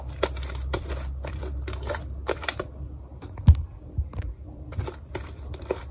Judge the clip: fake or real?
fake